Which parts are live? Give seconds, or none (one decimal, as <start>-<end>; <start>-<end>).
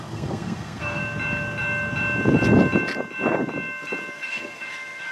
1.0-4.1